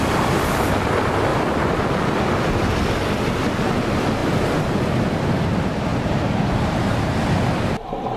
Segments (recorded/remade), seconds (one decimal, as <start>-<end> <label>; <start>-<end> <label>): 0.0-1.3 recorded; 1.3-1.8 remade; 1.8-5.9 recorded; 5.9-7.2 remade; 7.2-8.2 recorded